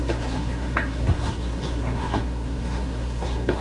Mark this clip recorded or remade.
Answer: remade